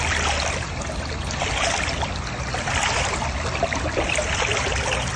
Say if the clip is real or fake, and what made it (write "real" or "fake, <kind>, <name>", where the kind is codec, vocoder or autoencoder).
real